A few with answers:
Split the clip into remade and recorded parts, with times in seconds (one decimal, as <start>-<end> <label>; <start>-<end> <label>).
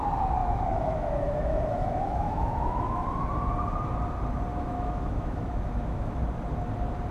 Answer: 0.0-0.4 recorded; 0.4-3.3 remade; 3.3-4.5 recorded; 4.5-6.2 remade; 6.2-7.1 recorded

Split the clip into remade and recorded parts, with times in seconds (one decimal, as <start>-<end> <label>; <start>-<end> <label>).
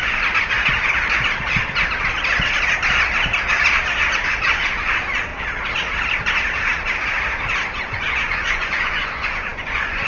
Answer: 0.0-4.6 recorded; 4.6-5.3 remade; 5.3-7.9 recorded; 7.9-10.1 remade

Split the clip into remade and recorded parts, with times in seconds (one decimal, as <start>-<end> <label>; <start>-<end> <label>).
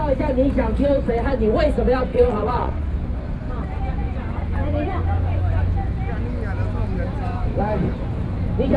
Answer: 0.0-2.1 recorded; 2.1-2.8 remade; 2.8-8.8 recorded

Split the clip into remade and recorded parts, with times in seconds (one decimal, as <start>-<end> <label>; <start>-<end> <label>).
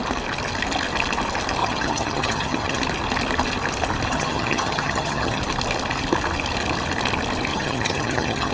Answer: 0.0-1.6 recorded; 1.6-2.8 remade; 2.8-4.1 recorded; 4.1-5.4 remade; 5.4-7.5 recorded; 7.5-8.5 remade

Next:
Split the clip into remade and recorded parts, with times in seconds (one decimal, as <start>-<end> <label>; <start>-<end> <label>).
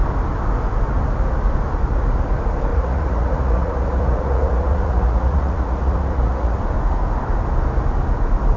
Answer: 0.0-2.7 recorded; 2.7-6.6 remade; 6.6-8.6 recorded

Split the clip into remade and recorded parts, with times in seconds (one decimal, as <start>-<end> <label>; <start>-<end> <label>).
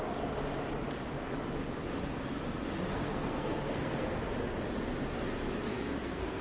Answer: 0.0-2.9 recorded; 2.9-4.2 remade; 4.2-5.7 recorded; 5.7-6.4 remade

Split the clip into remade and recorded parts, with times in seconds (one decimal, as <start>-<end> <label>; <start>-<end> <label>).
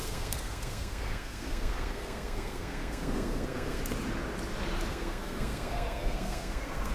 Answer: 0.0-3.8 remade; 3.8-4.9 recorded; 4.9-6.9 remade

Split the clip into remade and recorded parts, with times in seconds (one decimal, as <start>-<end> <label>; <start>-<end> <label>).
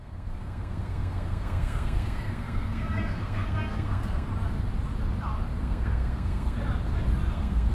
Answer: 0.0-4.3 remade; 4.3-5.6 recorded; 5.6-6.6 remade; 6.6-7.3 recorded; 7.3-7.7 remade